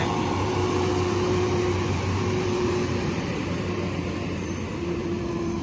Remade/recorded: remade